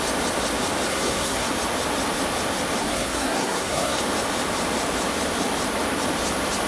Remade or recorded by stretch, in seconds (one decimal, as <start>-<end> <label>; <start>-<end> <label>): 0.0-0.9 recorded; 0.9-1.5 remade; 1.5-2.8 recorded; 2.8-4.0 remade; 4.0-6.7 recorded